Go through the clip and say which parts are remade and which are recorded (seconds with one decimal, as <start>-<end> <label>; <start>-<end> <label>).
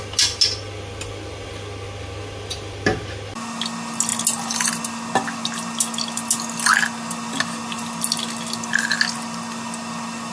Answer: 0.0-10.3 recorded